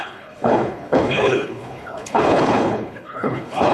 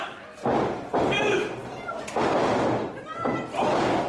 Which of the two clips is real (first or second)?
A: second